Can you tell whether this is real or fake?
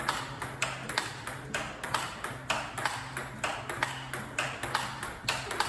real